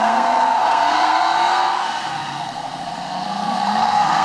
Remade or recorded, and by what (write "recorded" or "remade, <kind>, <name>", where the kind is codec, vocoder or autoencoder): remade, codec, SNAC